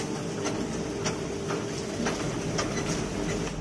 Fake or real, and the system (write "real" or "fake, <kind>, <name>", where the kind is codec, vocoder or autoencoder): real